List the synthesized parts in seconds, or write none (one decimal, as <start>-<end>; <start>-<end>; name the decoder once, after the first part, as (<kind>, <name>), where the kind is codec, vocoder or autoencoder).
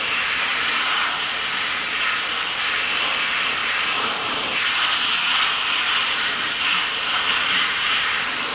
3.6-4.5 (vocoder, BigVGAN v2); 6.0-8.5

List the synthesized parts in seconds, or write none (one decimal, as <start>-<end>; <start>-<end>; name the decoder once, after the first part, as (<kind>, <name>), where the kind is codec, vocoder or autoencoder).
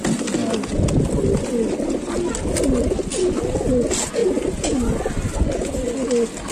none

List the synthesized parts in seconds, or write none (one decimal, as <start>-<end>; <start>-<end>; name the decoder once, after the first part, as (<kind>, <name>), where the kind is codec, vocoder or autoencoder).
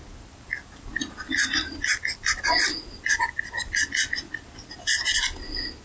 none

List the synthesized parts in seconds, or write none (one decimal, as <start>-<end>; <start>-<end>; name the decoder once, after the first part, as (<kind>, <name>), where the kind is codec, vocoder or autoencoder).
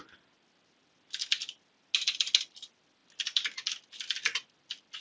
none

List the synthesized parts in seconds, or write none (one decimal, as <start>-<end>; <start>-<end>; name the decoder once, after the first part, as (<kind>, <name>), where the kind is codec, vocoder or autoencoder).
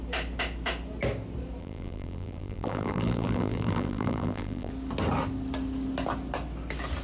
1.6-4.7 (vocoder, BigVGAN v2)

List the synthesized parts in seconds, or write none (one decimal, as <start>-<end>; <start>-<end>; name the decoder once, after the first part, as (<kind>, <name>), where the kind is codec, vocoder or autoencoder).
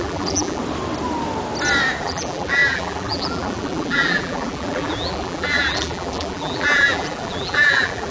0.0-0.6 (vocoder, BigVGAN v2); 2.0-8.1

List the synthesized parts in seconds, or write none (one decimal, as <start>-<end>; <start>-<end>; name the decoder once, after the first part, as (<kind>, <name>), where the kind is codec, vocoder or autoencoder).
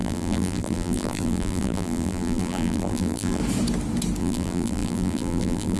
0.0-3.4 (vocoder, BigVGAN v2); 4.2-5.8